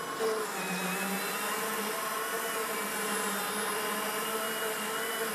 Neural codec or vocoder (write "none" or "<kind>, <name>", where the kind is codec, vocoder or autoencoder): none